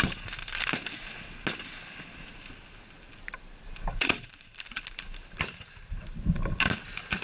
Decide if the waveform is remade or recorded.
recorded